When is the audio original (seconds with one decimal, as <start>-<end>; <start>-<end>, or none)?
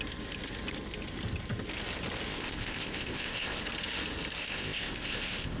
0.0-2.3; 3.6-4.4